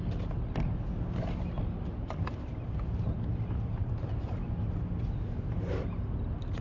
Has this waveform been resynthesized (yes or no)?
no